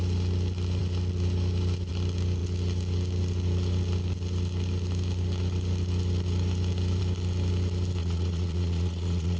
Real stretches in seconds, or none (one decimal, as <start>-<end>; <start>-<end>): 0.0-8.0